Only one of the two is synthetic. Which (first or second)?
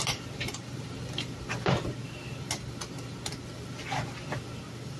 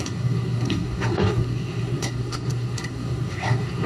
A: second